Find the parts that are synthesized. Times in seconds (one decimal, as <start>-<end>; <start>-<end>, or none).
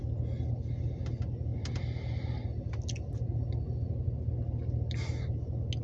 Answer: none